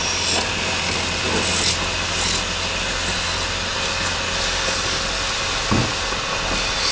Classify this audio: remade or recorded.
recorded